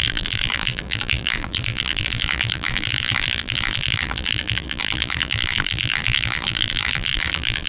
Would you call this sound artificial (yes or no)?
yes